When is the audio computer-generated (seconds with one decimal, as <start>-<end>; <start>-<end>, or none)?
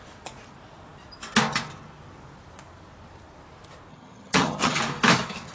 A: 3.9-4.8